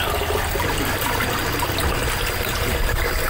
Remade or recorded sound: recorded